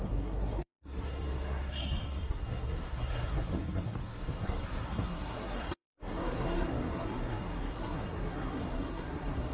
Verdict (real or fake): fake